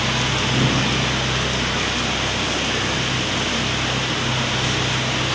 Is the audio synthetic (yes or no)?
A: no